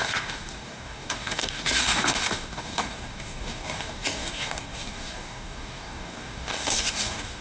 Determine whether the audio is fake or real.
fake